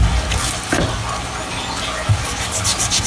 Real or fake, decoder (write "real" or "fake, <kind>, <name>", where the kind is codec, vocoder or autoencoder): real